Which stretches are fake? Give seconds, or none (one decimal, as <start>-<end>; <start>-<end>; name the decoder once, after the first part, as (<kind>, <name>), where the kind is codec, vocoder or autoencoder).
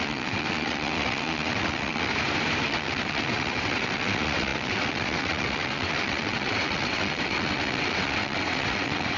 0.0-2.1 (vocoder, WaveNeXt); 2.6-9.2